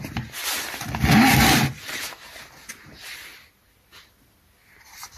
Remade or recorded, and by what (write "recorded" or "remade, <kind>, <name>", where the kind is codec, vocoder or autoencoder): recorded